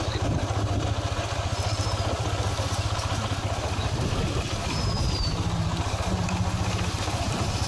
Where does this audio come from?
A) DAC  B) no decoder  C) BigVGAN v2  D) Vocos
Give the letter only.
B